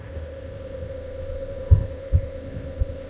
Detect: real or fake fake